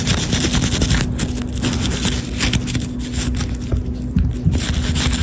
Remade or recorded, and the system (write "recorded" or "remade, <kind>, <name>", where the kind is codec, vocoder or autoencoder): recorded